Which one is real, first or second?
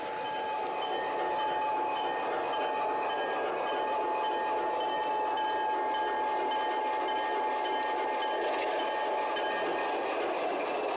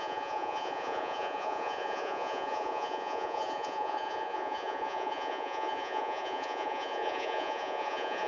first